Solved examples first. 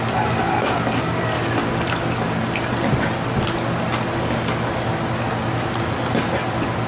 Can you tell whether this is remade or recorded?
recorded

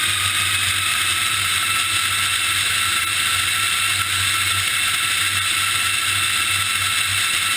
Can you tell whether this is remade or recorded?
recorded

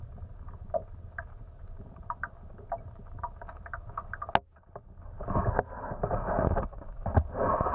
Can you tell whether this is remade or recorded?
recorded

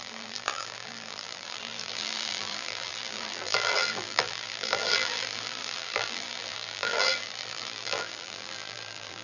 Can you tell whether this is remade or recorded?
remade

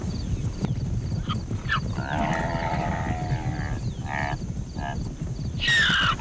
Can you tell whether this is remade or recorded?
recorded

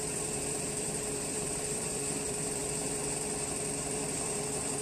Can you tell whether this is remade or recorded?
remade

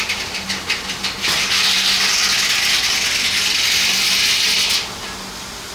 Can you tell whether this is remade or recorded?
recorded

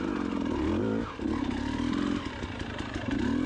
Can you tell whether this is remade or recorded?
recorded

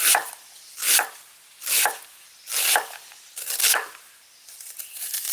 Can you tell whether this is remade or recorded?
recorded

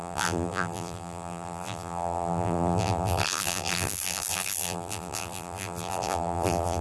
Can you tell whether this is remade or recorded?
remade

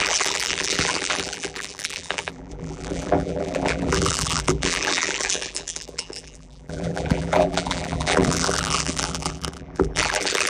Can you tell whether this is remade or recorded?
remade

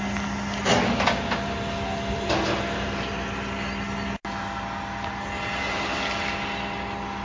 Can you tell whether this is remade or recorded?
recorded